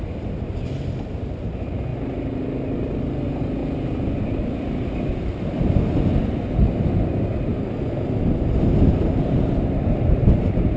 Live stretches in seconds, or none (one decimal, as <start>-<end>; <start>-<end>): 0.0-10.8